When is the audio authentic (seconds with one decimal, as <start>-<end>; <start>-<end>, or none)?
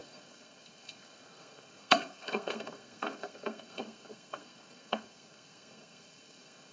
none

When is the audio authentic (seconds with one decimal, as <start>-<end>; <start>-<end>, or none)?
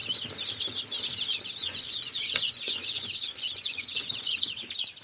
0.0-1.6; 4.6-5.0